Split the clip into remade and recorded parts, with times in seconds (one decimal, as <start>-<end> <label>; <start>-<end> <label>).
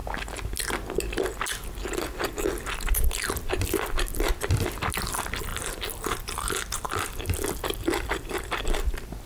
0.0-1.8 recorded; 1.8-3.2 remade; 3.2-5.5 recorded; 5.5-8.6 remade; 8.6-9.3 recorded